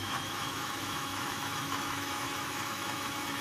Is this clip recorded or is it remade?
remade